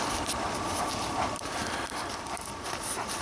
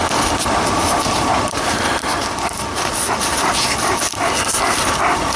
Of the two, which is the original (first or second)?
second